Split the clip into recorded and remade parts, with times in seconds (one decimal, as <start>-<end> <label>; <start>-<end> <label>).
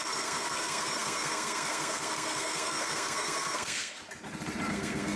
0.0-4.0 remade; 4.0-4.7 recorded; 4.7-5.2 remade